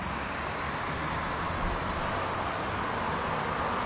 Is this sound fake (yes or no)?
yes